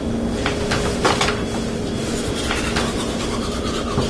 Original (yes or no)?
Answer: yes